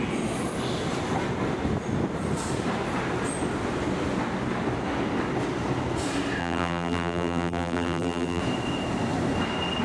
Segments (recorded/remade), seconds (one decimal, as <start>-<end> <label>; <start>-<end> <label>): 0.0-6.4 recorded; 6.4-8.4 remade; 8.4-9.8 recorded